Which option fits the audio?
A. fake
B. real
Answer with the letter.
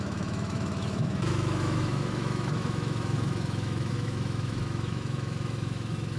A